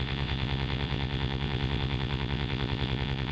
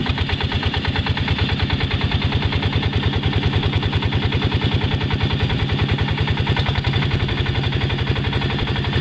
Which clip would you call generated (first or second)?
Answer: first